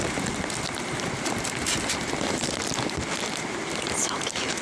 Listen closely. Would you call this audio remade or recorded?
recorded